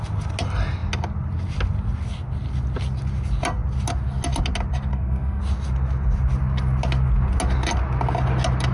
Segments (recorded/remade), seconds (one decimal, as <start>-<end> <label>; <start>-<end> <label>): 0.0-4.9 recorded; 4.9-5.4 remade; 5.4-8.7 recorded